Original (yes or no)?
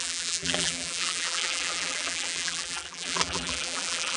no